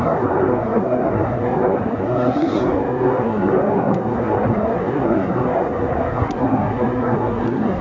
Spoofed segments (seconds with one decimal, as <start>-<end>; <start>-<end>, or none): 0.0-7.8